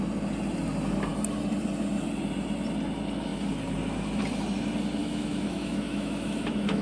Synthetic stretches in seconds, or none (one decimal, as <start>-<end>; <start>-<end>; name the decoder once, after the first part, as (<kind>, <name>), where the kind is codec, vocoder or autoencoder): 5.0-6.8 (autoencoder, DAC-VAE)